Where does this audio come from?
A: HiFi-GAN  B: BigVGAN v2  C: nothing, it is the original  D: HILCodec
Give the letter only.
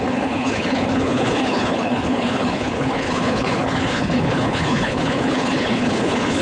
D